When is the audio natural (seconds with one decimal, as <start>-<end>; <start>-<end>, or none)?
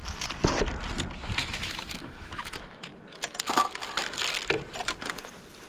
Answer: 0.0-1.4; 2.9-5.7